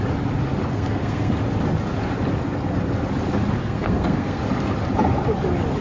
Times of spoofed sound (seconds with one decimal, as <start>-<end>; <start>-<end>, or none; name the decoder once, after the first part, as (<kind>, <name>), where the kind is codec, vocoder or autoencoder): 0.7-1.3 (codec, SNAC); 3.6-4.4